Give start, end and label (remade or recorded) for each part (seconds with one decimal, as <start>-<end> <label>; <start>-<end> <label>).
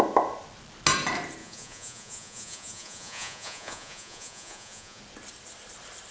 0.0-1.4 recorded; 1.4-5.0 remade; 5.0-6.1 recorded